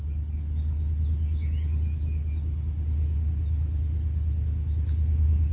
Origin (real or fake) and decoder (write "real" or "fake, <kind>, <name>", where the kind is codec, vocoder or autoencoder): real